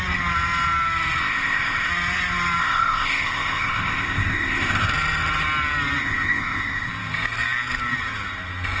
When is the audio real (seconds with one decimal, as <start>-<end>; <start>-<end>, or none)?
0.0-1.2; 1.9-2.6; 4.9-6.0; 6.9-8.8